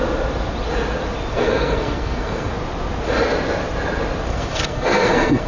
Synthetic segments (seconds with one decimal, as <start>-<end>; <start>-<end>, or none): 1.3-2.5; 4.3-5.5